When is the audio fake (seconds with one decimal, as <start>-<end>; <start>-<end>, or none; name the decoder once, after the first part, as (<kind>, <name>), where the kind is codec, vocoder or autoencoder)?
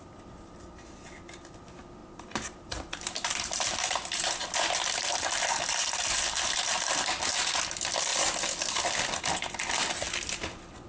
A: 2.0-4.2 (vocoder, BigVGAN v2)